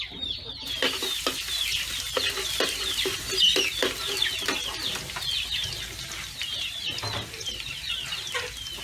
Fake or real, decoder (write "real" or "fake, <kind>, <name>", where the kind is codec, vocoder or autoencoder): real